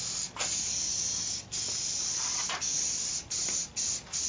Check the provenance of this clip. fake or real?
real